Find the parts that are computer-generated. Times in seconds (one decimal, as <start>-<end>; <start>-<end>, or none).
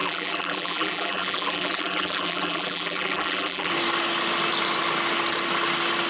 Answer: 0.0-3.7